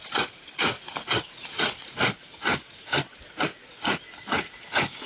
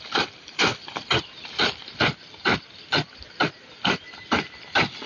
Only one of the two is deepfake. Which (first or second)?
first